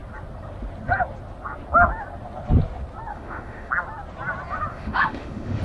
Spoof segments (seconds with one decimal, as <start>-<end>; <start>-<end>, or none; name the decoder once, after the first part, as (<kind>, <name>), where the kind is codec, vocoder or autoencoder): 3.1-3.7 (autoencoder, DAC-VAE); 4.7-5.6